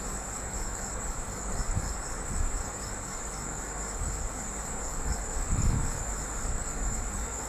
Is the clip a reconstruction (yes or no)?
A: yes